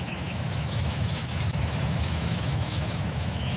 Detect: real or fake fake